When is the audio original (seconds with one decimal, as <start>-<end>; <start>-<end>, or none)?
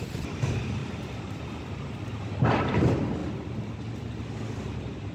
0.8-1.7; 3.2-4.5